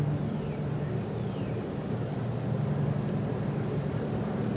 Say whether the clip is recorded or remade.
recorded